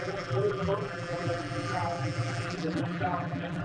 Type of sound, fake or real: fake